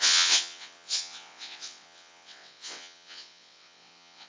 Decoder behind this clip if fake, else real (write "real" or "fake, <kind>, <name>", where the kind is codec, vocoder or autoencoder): fake, vocoder, WaveNeXt